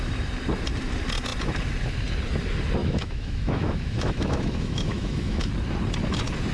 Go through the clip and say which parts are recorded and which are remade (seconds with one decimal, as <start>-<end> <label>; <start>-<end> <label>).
0.0-2.8 recorded; 2.8-5.5 remade; 5.5-6.5 recorded